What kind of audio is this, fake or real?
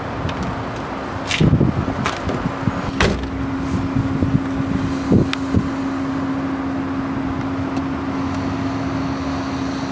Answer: real